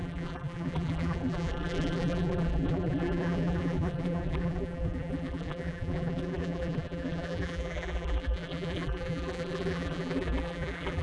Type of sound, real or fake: fake